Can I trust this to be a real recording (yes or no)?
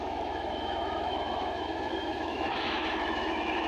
no